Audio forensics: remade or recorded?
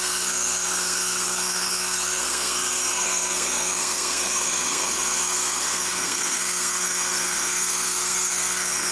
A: remade